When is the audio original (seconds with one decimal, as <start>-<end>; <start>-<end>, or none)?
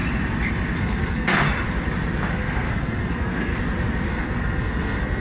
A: 0.0-0.8; 1.3-2.3; 3.5-4.1